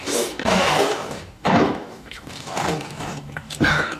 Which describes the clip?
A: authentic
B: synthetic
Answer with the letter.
B